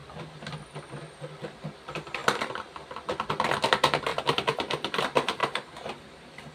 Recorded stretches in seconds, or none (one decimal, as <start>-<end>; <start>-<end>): 0.0-1.5; 2.2-3.3; 5.4-5.9